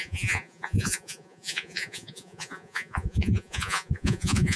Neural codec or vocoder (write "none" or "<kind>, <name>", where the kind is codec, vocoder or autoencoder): vocoder, Vocos